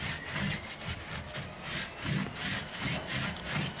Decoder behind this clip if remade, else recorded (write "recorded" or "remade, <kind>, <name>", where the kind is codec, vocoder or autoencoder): recorded